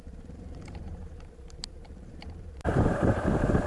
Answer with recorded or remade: remade